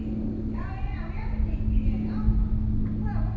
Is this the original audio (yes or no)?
yes